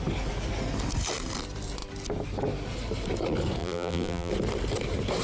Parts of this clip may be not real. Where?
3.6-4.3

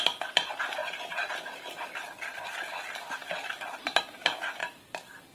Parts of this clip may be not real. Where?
0.8-4.0; 4.6-5.3

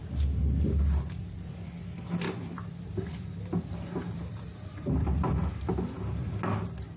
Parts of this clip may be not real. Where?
1.2-5.4

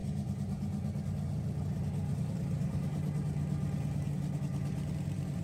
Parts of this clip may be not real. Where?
2.1-2.9; 4.4-5.4

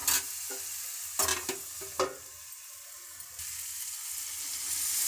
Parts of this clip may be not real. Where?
none